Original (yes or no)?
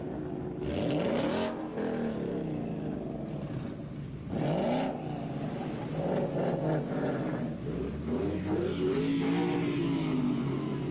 yes